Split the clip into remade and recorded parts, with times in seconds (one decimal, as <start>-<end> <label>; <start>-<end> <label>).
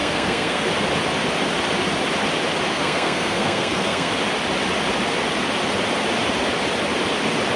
0.0-0.7 remade; 0.7-2.7 recorded; 2.7-4.1 remade; 4.1-7.6 recorded